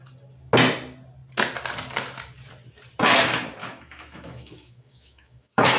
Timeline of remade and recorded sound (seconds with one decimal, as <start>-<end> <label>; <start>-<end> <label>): 0.0-3.6 recorded; 3.6-5.8 remade